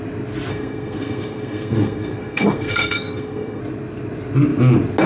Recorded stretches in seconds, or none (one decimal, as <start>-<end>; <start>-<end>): 0.0-0.5; 3.6-5.1

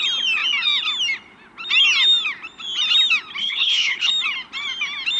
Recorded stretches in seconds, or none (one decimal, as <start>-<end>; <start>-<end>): 0.0-3.4; 4.1-5.2

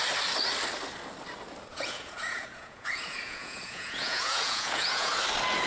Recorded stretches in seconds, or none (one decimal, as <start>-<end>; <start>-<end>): 0.0-1.7; 5.1-5.7

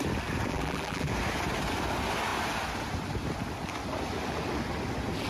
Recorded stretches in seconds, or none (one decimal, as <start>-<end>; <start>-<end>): 0.0-0.5; 1.1-5.3

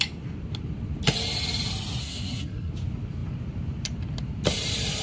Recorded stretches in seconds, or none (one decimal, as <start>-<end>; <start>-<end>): 0.0-2.0; 2.7-5.0

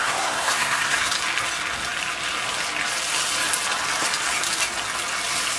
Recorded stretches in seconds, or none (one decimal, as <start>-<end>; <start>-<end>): 1.1-5.6